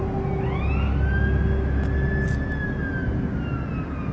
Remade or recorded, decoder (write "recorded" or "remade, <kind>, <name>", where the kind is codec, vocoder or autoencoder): recorded